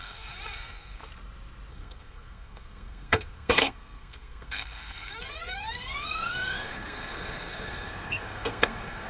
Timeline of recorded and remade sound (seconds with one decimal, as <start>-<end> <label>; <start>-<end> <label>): 0.0-1.0 remade; 1.0-1.7 recorded; 1.7-9.1 remade